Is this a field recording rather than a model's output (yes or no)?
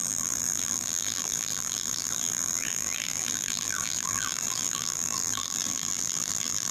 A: no